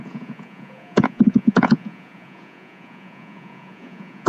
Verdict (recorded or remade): remade